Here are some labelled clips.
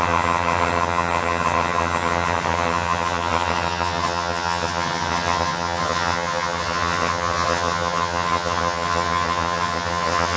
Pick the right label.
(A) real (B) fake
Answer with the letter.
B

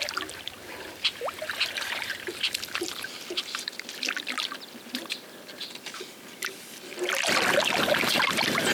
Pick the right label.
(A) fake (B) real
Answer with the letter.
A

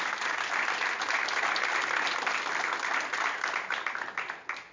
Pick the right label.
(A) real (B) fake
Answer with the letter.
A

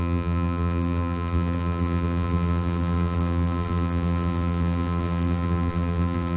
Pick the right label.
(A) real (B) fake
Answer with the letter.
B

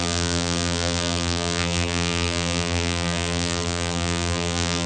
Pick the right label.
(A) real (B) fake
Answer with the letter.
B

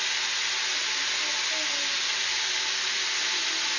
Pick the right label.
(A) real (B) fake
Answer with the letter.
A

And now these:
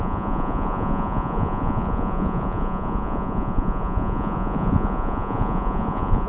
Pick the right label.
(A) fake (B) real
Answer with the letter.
A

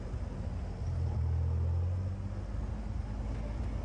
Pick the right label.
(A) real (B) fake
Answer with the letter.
A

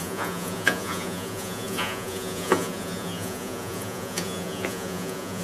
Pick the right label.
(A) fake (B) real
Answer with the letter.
A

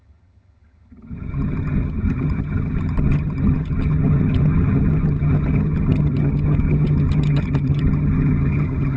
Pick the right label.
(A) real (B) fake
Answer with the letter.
B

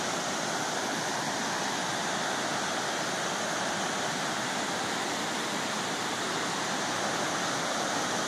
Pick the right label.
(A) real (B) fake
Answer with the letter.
A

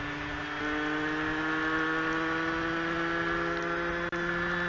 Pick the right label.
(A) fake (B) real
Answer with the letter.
B